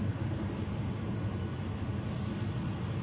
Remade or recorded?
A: recorded